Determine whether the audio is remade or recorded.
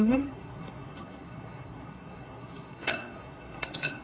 remade